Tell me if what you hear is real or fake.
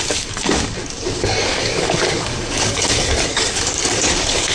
fake